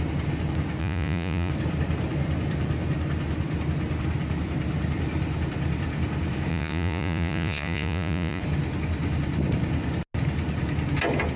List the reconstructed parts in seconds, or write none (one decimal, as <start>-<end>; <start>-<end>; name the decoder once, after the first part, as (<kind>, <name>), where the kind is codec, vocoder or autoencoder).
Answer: 0.8-1.5 (vocoder, Vocos); 6.5-8.4